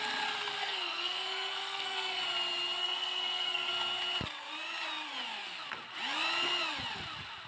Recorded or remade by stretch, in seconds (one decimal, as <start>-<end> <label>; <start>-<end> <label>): 0.0-0.6 recorded; 0.6-2.2 remade; 2.2-2.8 recorded; 2.8-3.7 remade; 3.7-7.5 recorded